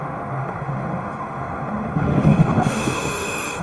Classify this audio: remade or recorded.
remade